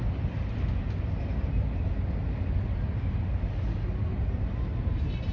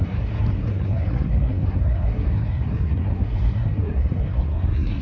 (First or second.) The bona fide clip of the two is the first